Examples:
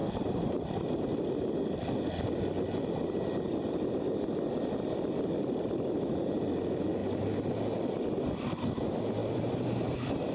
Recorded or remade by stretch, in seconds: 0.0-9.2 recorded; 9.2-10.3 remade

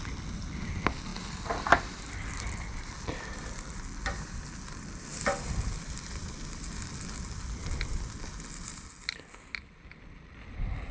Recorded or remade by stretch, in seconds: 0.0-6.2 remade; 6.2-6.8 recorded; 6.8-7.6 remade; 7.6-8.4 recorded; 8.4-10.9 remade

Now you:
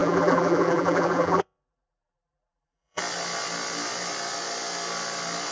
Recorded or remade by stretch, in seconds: 0.0-3.0 remade; 3.0-5.5 recorded

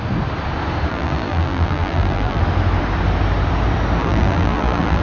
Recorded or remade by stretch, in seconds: 0.0-0.9 recorded; 0.9-2.4 remade; 2.4-4.0 recorded; 4.0-5.0 remade